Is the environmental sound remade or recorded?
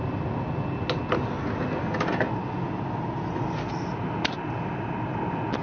recorded